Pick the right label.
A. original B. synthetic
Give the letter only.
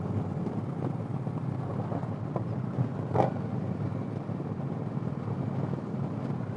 A